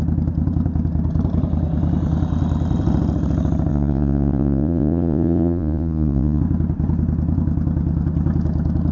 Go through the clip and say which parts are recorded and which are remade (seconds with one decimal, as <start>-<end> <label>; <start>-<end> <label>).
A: 0.0-3.7 recorded; 3.7-6.4 remade; 6.4-8.9 recorded